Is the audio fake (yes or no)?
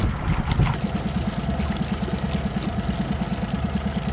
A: no